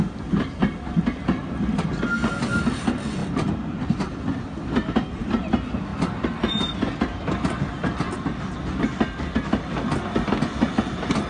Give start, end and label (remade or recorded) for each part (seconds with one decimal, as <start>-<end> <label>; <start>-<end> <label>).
0.0-11.3 recorded